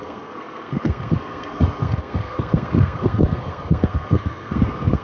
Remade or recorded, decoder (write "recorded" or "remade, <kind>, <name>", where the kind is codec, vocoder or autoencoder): remade, codec, SNAC